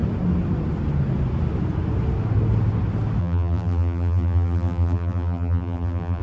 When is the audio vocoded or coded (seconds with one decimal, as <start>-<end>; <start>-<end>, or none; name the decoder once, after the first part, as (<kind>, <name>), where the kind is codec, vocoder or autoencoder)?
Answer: 3.2-6.2 (vocoder, BigVGAN v2)